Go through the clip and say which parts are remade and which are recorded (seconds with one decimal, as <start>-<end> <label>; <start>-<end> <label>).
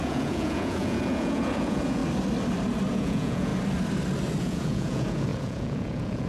0.0-2.0 remade; 2.0-2.9 recorded; 2.9-3.5 remade; 3.5-4.4 recorded; 4.4-6.3 remade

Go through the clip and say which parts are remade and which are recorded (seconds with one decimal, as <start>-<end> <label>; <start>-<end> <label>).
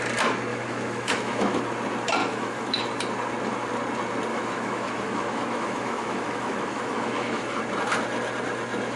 0.0-0.5 recorded; 0.5-1.6 remade; 1.6-2.2 recorded; 2.2-2.8 remade; 2.8-4.3 recorded; 4.3-7.6 remade; 7.6-9.0 recorded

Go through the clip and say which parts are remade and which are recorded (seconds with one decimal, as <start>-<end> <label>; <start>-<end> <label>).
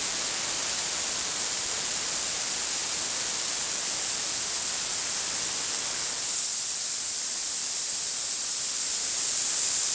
0.0-9.9 recorded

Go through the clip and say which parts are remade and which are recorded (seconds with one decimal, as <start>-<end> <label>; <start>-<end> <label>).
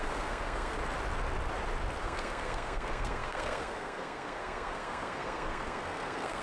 0.0-0.8 remade; 0.8-2.0 recorded; 2.0-6.4 remade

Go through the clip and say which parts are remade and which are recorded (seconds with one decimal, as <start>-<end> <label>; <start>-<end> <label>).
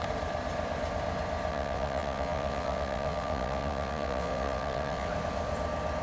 0.0-1.5 recorded; 1.5-5.1 remade; 5.1-6.0 recorded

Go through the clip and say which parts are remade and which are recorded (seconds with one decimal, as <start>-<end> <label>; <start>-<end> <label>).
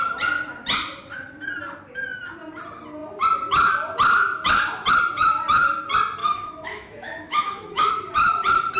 0.0-6.2 recorded; 6.2-7.9 remade; 7.9-8.8 recorded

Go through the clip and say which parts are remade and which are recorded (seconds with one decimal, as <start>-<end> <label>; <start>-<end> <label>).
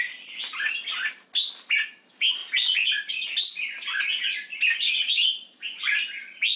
0.0-2.4 recorded; 2.4-3.1 remade; 3.1-6.6 recorded